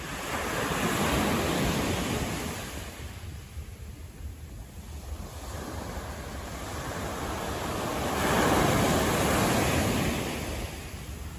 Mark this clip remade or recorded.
recorded